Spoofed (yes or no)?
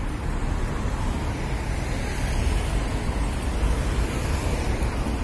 no